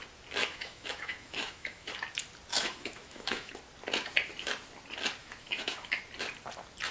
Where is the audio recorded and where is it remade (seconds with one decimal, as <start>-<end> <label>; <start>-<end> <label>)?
0.0-0.4 recorded; 0.4-1.9 remade; 1.9-2.5 recorded; 2.5-3.5 remade; 3.5-5.2 recorded; 5.2-6.0 remade; 6.0-6.9 recorded